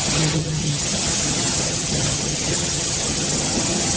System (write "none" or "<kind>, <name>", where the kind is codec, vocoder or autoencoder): vocoder, HiFi-GAN